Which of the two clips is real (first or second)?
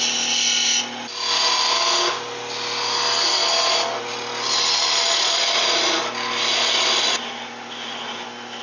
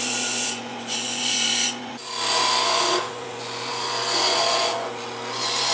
first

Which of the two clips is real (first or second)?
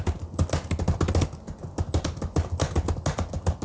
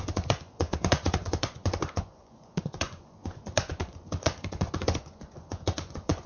first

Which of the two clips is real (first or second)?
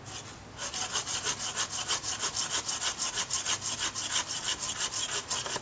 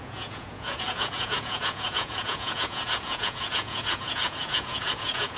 first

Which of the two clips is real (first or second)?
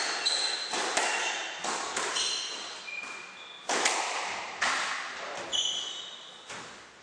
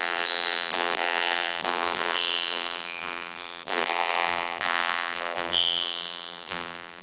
first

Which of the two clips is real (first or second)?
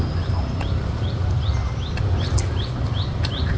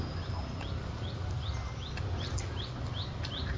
second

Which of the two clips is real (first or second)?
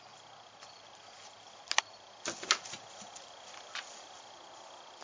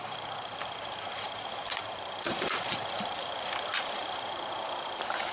first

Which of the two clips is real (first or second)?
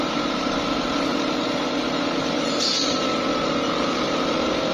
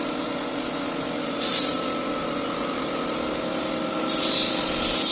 second